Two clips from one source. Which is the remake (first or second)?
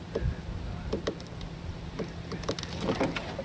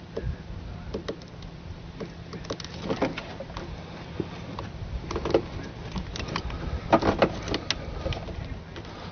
first